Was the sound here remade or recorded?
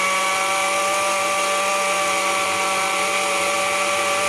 remade